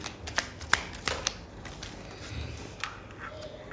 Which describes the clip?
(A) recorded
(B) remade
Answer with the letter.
A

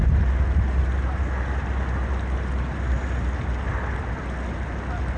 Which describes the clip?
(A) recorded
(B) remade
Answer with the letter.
A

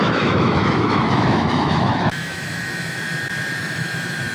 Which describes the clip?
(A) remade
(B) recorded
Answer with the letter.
A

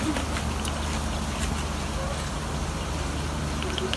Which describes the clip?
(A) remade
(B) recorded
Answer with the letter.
B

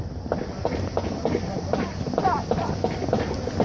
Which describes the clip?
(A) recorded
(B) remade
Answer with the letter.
A